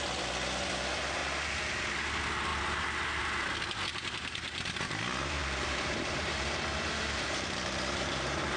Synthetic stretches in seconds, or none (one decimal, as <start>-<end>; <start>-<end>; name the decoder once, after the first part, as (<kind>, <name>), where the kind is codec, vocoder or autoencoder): 3.9-5.0 (vocoder, BigVGAN v2); 5.4-8.6